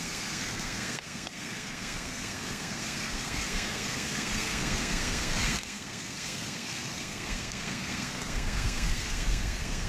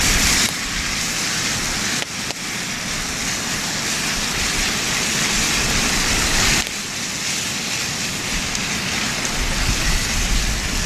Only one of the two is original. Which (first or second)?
second